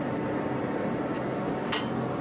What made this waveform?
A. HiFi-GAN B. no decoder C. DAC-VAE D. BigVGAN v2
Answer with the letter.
B